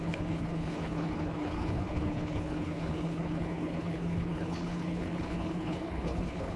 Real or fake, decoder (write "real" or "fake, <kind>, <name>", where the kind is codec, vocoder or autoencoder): fake, codec, HILCodec